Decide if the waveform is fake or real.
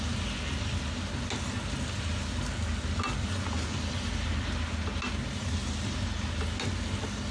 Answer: real